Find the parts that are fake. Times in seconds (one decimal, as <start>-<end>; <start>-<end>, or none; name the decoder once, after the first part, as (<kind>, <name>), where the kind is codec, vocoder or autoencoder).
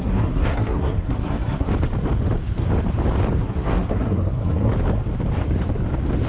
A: 0.0-1.7 (codec, SNAC); 3.4-4.7